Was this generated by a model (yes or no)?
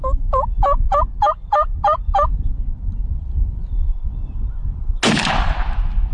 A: no